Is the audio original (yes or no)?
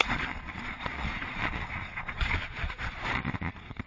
no